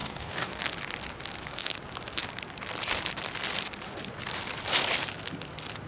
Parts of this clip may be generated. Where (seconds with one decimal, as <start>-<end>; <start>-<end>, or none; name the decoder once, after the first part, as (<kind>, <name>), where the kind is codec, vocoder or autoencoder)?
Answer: 0.0-0.6 (codec, DAC)